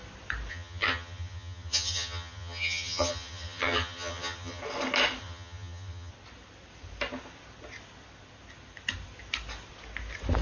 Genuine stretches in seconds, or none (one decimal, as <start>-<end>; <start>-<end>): 0.0-0.5; 4.6-5.2; 6.1-10.4